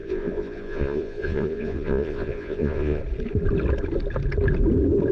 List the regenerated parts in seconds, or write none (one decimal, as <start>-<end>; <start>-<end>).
0.0-3.0